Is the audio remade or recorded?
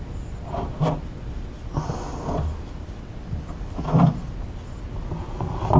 recorded